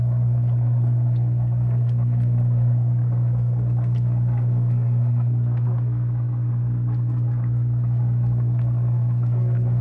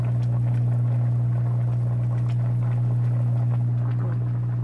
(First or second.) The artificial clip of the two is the first